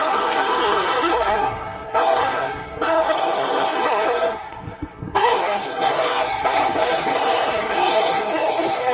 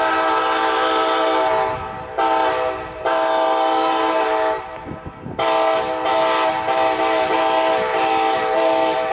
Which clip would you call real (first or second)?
second